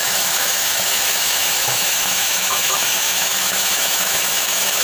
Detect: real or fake fake